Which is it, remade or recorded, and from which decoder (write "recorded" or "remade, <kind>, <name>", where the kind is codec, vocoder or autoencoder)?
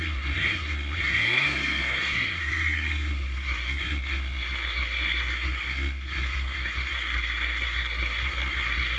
remade, codec, SNAC